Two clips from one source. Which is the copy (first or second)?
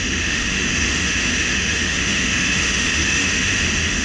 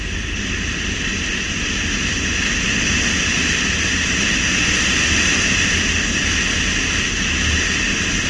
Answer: first